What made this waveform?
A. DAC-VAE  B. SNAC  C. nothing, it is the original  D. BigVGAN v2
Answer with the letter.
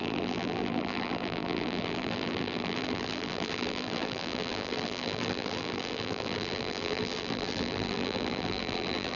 D